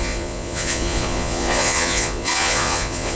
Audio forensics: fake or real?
fake